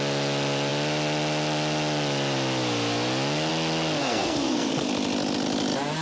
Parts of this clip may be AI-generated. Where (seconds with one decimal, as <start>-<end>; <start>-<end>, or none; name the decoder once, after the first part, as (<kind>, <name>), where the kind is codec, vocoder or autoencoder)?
4.0-4.9 (codec, SNAC)